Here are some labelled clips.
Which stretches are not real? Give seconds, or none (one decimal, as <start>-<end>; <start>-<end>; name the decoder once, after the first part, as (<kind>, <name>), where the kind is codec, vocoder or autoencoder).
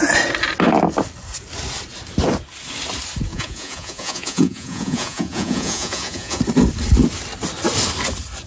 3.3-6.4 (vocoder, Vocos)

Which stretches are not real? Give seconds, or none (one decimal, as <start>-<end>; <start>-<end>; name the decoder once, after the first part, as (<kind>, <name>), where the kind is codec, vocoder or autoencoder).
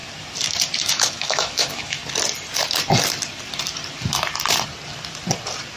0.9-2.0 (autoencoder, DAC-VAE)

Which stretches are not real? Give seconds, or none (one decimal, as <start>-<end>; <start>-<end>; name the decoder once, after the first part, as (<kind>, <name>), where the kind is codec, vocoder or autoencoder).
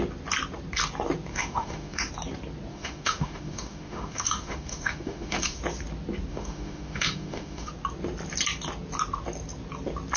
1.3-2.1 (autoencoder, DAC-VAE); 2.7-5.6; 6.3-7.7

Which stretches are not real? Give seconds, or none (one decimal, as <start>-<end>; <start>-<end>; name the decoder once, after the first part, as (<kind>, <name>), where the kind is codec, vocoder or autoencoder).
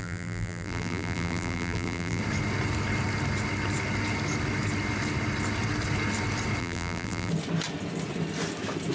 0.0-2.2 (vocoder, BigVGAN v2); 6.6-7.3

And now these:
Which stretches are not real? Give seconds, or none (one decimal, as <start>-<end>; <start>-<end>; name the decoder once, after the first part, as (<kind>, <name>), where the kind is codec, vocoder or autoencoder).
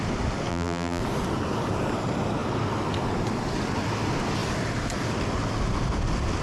0.5-1.0 (vocoder, BigVGAN v2)